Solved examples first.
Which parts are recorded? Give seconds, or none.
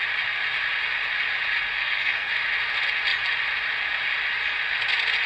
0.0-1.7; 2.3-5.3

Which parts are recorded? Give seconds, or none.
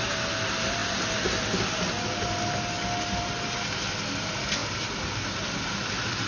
0.0-6.3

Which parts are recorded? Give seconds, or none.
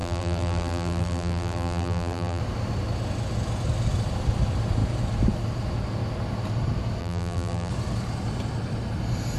2.4-7.0; 7.7-9.4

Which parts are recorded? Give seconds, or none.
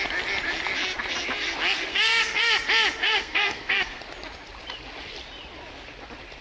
0.0-1.9; 2.5-3.0; 4.0-6.4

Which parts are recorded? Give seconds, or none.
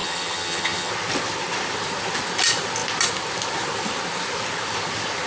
0.9-5.3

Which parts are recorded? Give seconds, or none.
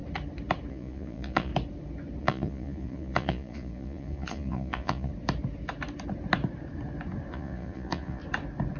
0.0-0.7; 1.5-2.2; 5.1-7.3; 8.2-8.8